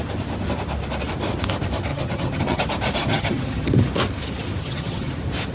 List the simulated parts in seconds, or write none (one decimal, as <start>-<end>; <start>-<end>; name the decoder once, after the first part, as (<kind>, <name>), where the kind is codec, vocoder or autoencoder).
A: 1.9-2.6 (vocoder, HiFi-GAN); 3.0-3.7; 4.6-5.1